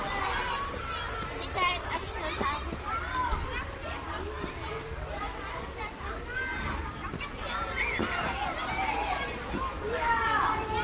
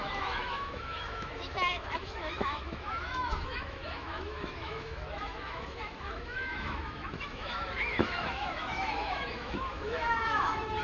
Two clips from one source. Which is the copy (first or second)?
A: second